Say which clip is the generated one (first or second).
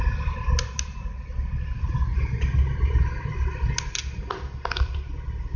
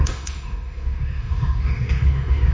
second